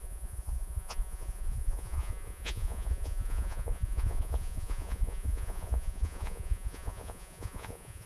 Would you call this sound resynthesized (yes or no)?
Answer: yes